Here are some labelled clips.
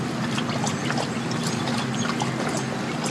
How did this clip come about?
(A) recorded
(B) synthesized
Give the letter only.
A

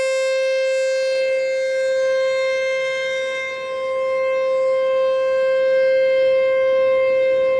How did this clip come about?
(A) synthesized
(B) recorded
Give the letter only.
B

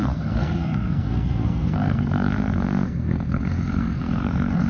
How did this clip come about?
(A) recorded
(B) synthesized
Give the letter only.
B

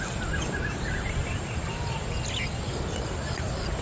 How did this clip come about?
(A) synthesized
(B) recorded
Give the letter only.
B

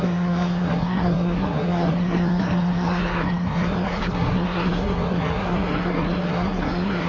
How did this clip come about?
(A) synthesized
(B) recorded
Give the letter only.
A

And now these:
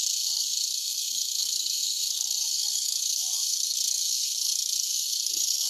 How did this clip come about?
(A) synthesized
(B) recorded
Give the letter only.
A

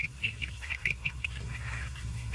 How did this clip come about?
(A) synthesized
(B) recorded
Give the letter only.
A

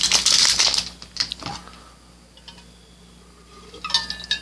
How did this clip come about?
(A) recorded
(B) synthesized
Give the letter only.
A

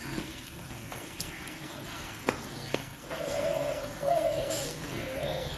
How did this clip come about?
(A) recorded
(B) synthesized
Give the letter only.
B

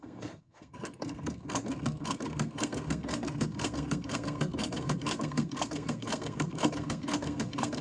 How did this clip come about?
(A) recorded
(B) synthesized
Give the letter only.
B